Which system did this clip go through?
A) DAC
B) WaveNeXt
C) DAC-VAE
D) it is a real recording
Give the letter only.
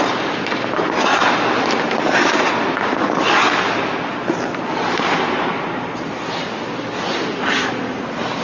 D